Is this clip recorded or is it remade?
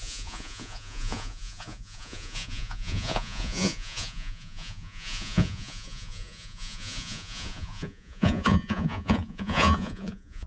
remade